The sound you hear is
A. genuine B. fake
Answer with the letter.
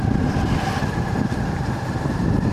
A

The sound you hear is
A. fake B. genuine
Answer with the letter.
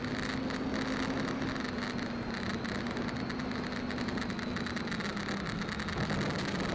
B